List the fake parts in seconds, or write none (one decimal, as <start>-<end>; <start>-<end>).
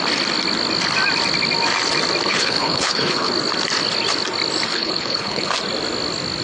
2.3-3.3; 4.7-5.5